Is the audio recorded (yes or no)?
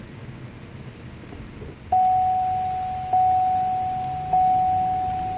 yes